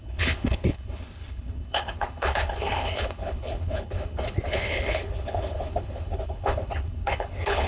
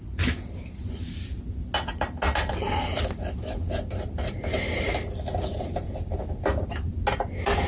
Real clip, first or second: second